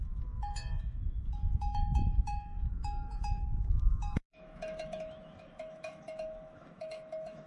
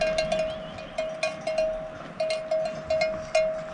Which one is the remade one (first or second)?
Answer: first